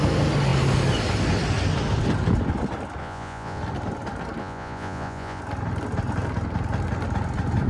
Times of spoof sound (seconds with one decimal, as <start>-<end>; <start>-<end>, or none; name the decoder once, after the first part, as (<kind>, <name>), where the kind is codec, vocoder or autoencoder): 3.0-3.6 (vocoder, Vocos); 4.4-5.4